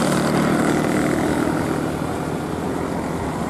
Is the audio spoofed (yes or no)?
no